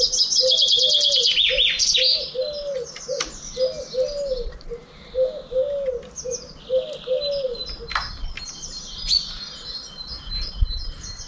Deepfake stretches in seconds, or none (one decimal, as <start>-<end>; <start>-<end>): none